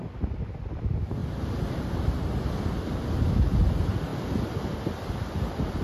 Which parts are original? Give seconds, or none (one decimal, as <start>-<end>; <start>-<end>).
0.0-5.8